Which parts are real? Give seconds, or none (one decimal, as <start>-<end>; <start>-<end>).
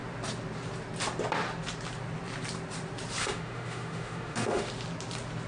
0.0-3.2; 4.7-5.5